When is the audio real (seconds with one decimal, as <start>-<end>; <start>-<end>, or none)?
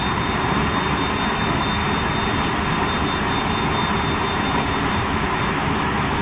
0.0-1.3; 1.8-5.5